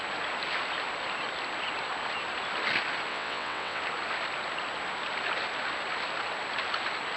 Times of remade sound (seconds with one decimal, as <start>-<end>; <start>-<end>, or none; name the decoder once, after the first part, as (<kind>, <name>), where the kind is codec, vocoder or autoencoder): 3.1-3.8 (vocoder, WaveNeXt)